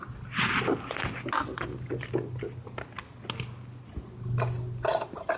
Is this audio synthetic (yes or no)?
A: no